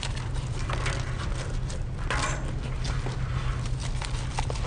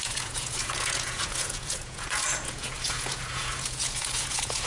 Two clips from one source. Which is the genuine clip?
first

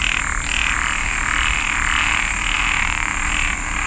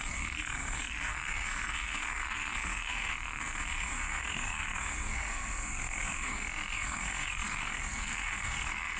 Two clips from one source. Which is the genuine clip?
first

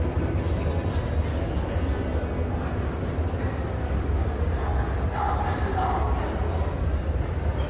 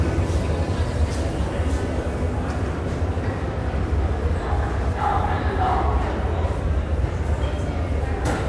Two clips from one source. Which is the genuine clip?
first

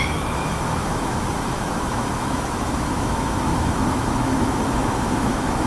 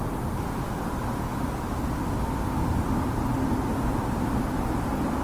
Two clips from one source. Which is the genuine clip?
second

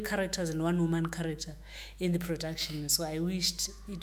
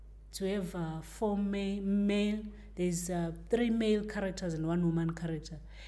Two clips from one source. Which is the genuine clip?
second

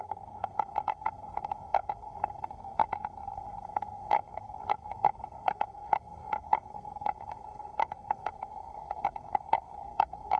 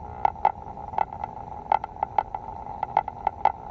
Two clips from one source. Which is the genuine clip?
second